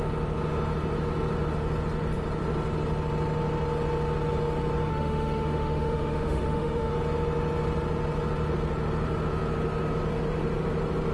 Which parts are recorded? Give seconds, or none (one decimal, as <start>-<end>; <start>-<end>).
0.0-4.9; 6.9-11.1